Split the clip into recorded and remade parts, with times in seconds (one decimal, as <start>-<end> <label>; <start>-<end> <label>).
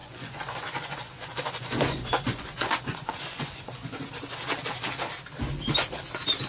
0.0-3.9 remade; 3.9-6.5 recorded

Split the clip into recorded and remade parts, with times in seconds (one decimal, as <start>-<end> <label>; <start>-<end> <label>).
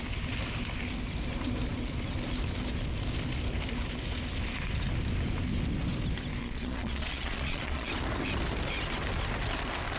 0.0-6.4 recorded; 6.4-7.9 remade; 7.9-10.0 recorded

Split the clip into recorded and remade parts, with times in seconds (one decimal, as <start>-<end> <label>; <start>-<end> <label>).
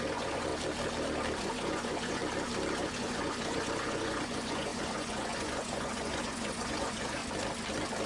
0.0-0.5 remade; 0.5-1.4 recorded; 1.4-2.2 remade; 2.2-2.8 recorded; 2.8-7.2 remade; 7.2-8.1 recorded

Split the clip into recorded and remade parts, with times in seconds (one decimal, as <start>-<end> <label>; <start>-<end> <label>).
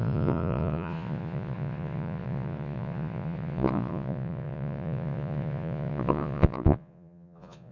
0.0-7.7 remade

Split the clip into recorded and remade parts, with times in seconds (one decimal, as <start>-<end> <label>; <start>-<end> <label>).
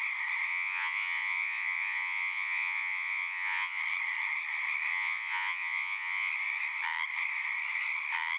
0.0-0.5 recorded; 0.5-3.8 remade; 3.8-4.9 recorded; 4.9-6.3 remade; 6.3-8.4 recorded